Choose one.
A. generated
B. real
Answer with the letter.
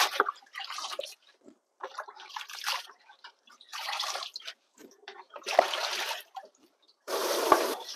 A